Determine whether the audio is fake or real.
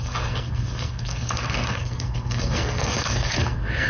fake